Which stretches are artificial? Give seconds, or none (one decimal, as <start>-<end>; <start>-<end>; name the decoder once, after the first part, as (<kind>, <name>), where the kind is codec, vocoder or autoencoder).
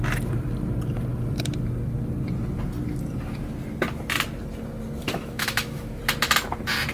5.0-6.0 (autoencoder, DAC-VAE)